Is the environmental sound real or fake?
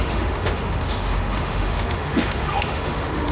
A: fake